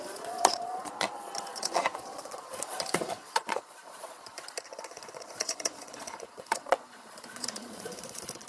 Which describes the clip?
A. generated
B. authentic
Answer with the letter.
A